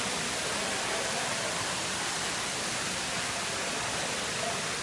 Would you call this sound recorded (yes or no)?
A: no